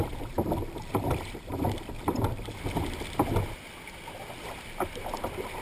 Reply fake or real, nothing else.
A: fake